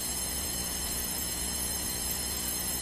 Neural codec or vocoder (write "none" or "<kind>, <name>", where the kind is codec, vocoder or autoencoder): vocoder, Vocos